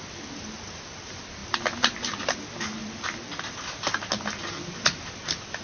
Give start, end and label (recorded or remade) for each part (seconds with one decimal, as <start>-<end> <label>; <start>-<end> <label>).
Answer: 0.0-5.6 recorded